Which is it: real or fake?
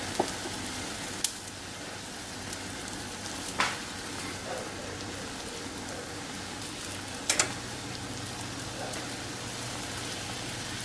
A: real